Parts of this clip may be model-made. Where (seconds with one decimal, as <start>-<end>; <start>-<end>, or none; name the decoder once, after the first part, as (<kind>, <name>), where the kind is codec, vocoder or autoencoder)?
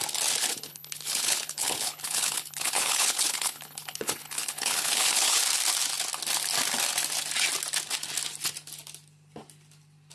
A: 0.5-5.4 (codec, HILCodec)